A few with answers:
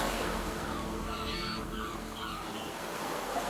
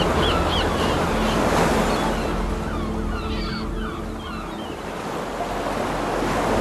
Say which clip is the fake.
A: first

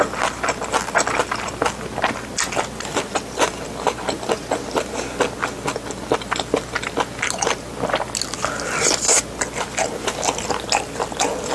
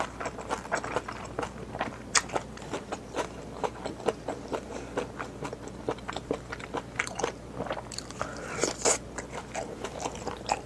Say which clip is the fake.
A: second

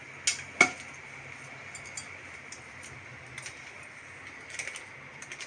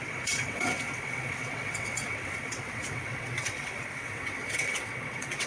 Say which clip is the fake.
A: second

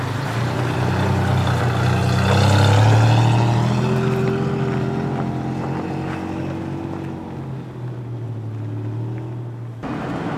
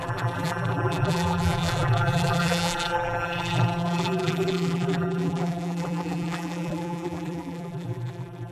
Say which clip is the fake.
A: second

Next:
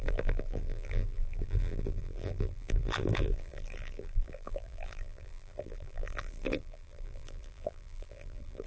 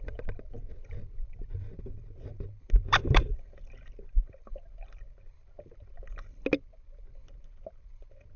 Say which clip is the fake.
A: first